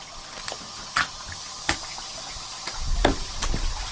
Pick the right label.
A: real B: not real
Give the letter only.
B